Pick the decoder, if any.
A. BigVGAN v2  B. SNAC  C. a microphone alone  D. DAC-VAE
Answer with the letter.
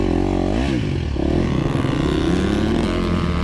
C